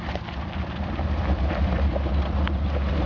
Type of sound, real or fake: real